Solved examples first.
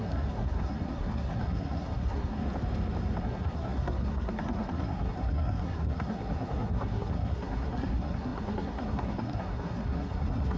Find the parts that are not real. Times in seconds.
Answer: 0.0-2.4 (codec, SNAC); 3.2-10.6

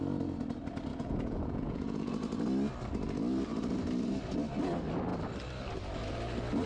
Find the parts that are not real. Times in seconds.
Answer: 0.9-2.1 (vocoder, Vocos)

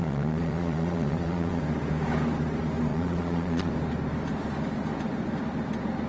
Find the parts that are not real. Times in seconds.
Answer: 0.0-1.6 (vocoder, Vocos); 2.9-3.7

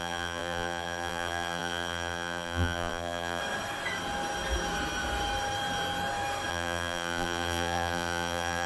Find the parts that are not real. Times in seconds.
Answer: 0.0-3.4 (vocoder, BigVGAN v2); 6.5-8.7

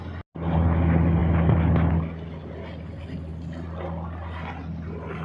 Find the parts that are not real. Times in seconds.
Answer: none

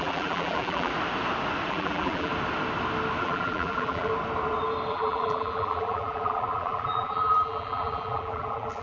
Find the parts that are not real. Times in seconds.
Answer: 0.0-0.9 (vocoder, BigVGAN v2); 1.7-2.3; 3.2-4.1; 4.9-8.8

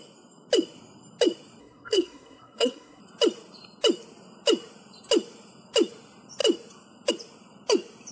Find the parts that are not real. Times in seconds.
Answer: 1.6-3.0 (codec, SNAC)

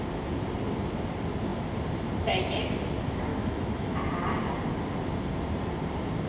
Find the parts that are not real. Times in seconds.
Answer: 3.3-3.9 (autoencoder, DAC-VAE)